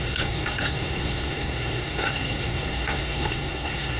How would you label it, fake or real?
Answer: fake